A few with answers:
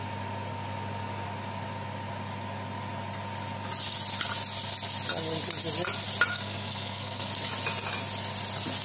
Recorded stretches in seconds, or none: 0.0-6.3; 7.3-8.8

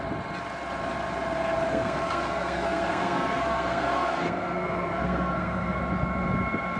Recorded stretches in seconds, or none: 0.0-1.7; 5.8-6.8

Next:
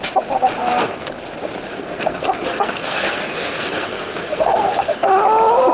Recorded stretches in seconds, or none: 0.0-0.6; 1.1-1.7; 5.1-5.7

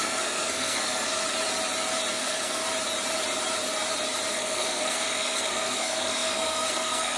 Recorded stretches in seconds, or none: 1.2-2.1; 2.6-4.3

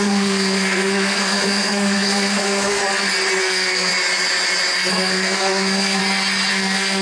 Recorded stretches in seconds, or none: 2.8-3.4; 3.9-4.9; 6.0-6.5

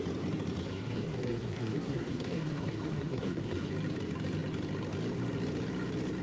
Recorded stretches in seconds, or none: 0.0-0.6; 3.7-6.2

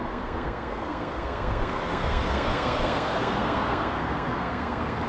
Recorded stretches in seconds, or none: none